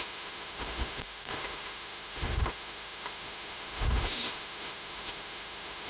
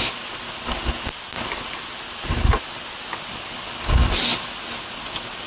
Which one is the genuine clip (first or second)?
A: second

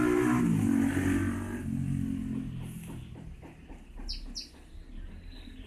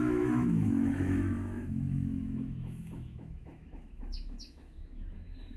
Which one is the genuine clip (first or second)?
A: first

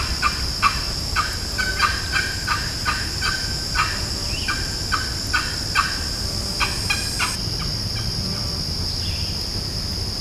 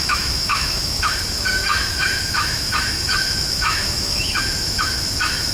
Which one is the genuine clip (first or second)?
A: first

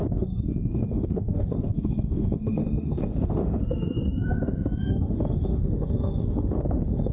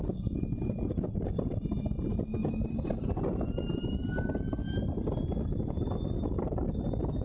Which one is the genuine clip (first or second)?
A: second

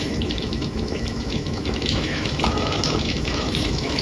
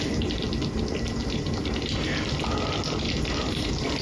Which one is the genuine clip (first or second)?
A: second